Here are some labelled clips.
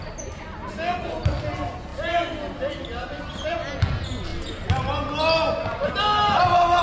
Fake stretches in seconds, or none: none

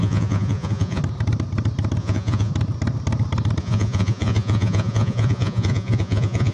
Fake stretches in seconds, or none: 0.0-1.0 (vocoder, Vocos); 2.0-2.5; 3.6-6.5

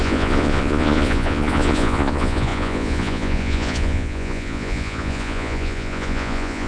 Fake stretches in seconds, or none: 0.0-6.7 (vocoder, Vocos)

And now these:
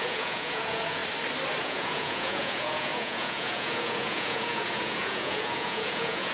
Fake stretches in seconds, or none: 0.0-1.0 (vocoder, Vocos); 1.6-6.3

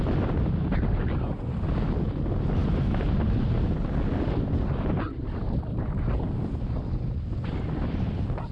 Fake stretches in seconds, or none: none

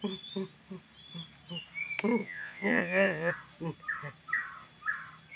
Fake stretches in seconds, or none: 2.2-3.3 (vocoder, Vocos)